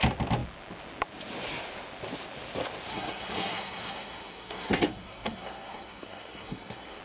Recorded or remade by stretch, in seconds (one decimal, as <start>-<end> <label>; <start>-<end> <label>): 0.0-2.9 recorded; 2.9-7.0 remade